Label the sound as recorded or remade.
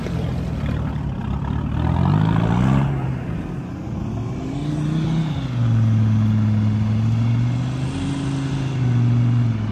recorded